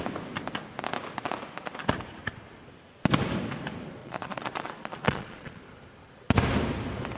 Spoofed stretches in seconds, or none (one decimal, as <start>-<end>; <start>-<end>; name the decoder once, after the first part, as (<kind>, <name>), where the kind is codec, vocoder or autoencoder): 4.0-5.6 (vocoder, Vocos)